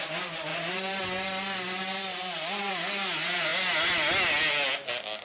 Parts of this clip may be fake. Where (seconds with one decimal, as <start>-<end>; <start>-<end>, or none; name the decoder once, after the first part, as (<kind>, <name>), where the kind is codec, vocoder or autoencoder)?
0.5-1.0 (vocoder, BigVGAN v2); 2.1-2.7